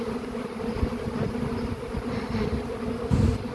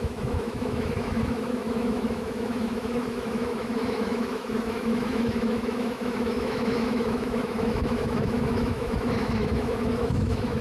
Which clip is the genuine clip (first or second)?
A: first